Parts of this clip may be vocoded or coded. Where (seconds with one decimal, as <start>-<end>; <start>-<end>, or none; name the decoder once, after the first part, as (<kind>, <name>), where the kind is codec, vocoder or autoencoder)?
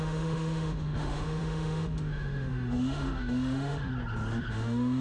0.0-3.9 (autoencoder, DAC-VAE); 4.5-5.0